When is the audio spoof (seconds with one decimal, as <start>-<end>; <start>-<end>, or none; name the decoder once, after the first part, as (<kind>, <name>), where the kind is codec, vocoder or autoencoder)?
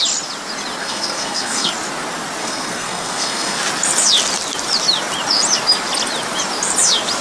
0.8-1.7 (codec, SNAC); 2.4-3.6